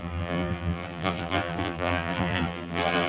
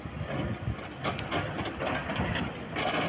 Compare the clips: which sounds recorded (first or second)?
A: second